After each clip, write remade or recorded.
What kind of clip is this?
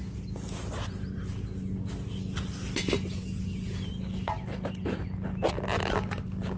recorded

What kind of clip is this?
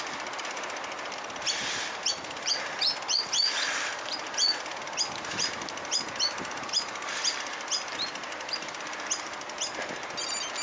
recorded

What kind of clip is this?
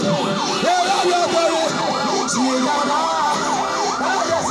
recorded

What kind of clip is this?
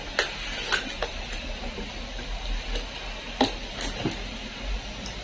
recorded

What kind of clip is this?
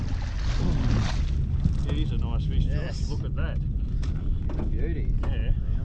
recorded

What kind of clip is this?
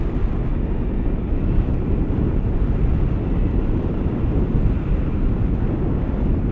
recorded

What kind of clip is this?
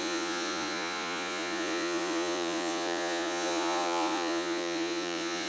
remade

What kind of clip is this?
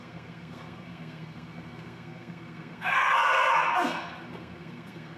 remade